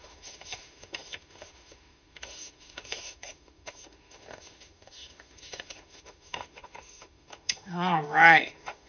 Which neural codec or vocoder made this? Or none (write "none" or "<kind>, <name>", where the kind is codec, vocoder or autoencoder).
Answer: autoencoder, DAC-VAE